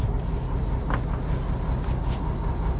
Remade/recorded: recorded